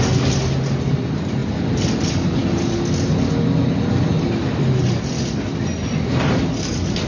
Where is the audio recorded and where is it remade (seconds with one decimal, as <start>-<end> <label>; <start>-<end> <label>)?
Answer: 0.0-7.1 recorded